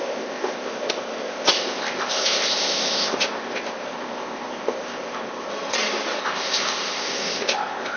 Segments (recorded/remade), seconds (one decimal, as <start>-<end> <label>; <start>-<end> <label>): 0.0-5.5 remade; 5.5-6.2 recorded; 6.2-8.0 remade